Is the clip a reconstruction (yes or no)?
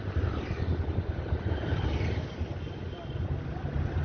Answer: no